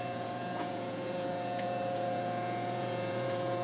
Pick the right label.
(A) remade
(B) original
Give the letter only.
A